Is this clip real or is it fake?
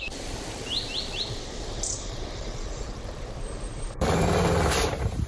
fake